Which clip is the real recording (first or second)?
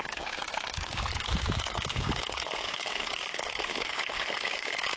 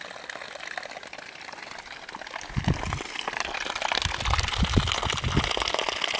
second